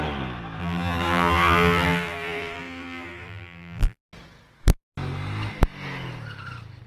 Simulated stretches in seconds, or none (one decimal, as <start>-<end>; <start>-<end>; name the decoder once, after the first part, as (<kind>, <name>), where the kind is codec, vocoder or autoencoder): 0.6-4.0 (vocoder, BigVGAN v2)

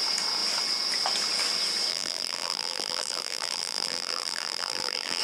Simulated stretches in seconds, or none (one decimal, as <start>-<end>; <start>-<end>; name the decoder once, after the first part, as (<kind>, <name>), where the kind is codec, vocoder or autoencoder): 1.9-5.2 (vocoder, BigVGAN v2)

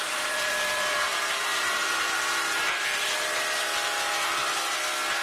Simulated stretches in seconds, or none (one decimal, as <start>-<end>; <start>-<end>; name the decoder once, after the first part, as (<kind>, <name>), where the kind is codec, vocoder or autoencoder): 0.0-4.4 (vocoder, BigVGAN v2)